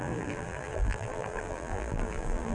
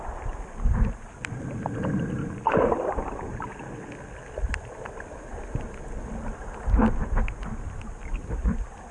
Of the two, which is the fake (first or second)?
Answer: first